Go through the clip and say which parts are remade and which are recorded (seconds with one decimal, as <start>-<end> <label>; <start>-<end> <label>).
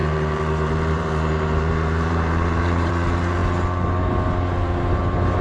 0.0-2.9 remade; 2.9-5.4 recorded